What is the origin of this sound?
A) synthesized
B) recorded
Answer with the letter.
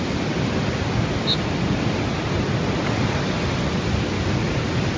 B